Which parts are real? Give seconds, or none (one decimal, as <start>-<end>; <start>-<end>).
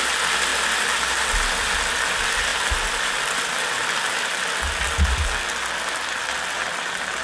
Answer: 0.0-7.2